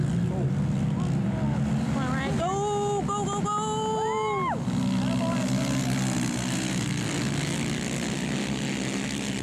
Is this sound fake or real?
real